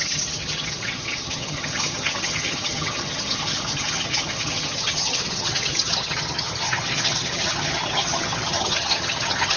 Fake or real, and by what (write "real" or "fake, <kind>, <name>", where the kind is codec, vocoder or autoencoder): fake, vocoder, HiFi-GAN